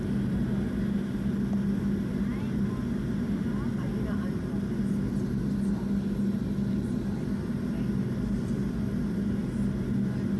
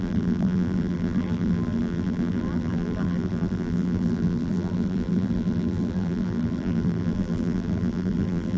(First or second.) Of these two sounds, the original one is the first